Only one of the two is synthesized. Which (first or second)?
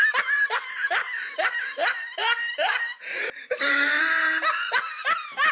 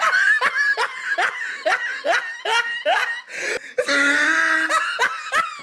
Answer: first